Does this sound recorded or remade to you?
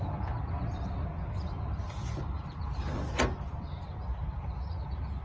recorded